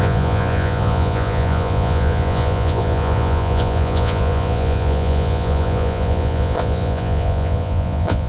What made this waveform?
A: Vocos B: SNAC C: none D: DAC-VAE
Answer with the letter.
A